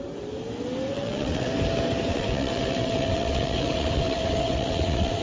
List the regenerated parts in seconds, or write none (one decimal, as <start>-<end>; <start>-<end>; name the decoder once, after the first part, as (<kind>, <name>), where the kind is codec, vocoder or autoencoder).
0.9-1.5 (vocoder, WaveNeXt); 2.1-5.2